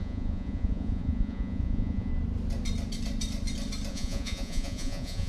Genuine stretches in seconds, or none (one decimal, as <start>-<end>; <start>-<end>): 2.1-3.9